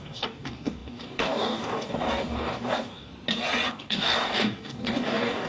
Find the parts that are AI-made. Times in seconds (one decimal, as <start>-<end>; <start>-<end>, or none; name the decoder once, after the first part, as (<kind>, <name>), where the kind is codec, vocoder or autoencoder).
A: 0.0-3.1 (codec, DAC); 3.7-5.5